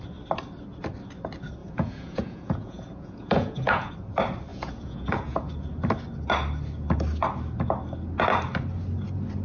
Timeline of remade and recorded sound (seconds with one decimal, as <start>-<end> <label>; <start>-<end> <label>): 0.0-1.6 recorded; 1.6-3.9 remade; 3.9-4.5 recorded; 4.5-5.5 remade; 5.5-9.4 recorded